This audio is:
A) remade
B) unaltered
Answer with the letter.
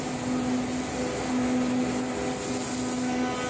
B